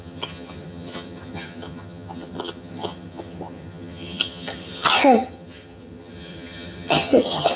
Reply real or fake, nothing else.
fake